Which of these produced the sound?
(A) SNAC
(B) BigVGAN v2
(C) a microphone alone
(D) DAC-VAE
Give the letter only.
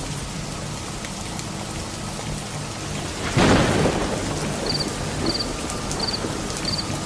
C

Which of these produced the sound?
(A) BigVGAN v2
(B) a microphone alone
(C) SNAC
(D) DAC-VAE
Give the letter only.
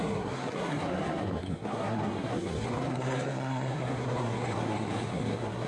C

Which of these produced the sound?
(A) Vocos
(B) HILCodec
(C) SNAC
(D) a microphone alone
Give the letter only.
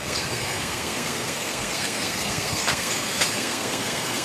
C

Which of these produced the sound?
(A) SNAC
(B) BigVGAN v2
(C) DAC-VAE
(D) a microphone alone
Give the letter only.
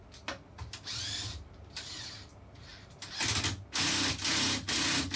D